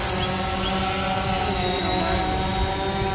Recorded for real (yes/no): yes